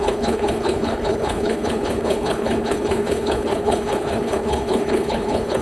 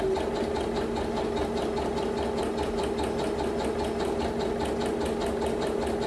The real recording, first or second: second